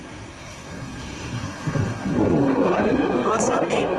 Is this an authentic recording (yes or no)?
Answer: no